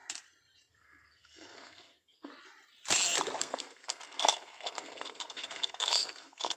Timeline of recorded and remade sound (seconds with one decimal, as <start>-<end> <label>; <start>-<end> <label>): 0.0-0.7 recorded; 0.7-2.3 remade; 2.3-3.4 recorded; 3.4-6.6 remade